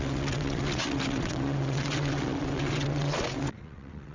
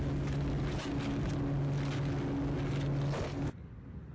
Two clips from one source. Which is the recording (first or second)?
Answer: second